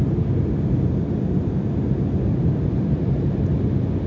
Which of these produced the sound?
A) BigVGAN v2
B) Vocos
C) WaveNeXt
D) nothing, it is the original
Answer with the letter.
D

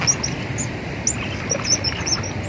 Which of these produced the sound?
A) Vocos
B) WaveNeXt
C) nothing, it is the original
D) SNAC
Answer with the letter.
C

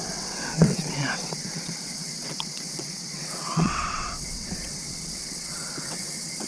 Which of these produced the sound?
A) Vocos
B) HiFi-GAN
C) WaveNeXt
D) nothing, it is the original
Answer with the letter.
C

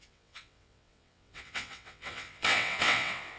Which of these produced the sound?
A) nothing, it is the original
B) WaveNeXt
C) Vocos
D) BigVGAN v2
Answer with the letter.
B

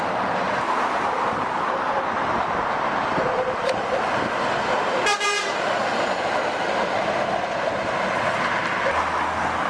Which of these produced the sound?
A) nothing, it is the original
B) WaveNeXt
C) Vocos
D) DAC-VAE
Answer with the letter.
A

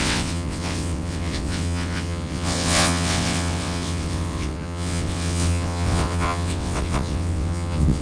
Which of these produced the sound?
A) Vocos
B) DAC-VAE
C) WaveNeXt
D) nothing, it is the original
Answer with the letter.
C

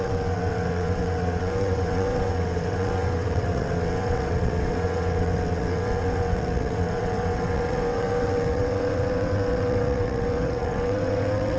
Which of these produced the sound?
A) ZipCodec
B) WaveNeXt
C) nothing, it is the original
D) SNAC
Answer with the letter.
B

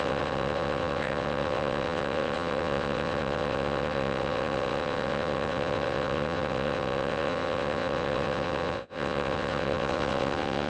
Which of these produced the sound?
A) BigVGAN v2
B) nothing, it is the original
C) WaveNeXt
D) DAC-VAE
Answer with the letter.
C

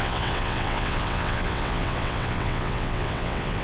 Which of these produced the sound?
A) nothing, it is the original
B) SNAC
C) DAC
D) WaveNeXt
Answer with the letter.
D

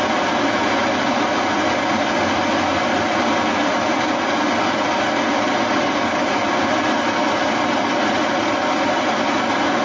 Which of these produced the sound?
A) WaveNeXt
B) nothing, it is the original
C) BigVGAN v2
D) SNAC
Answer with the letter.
B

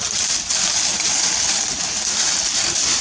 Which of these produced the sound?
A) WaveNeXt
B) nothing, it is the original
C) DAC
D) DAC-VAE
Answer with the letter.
B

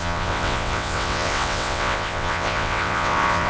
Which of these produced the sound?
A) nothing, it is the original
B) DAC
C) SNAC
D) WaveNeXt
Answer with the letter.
D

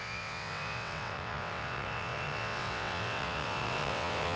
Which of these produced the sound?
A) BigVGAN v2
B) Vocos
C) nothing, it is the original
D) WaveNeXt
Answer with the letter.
D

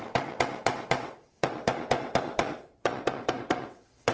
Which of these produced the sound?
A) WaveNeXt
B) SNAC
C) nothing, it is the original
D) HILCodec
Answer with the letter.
A